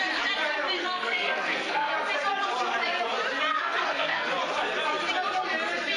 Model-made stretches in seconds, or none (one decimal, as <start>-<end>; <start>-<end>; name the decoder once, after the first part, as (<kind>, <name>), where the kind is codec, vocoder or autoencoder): 0.8-1.9 (codec, SNAC); 3.5-4.3